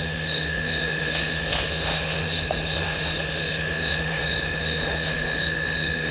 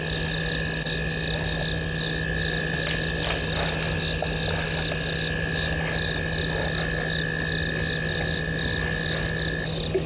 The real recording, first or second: second